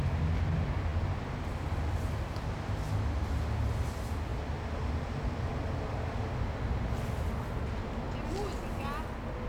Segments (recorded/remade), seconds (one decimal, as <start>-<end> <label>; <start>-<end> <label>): 0.0-9.5 recorded